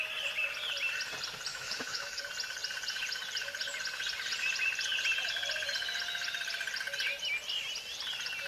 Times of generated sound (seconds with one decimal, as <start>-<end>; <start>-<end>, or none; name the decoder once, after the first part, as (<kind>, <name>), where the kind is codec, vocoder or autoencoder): 1.5-2.2 (autoencoder, DAC-VAE)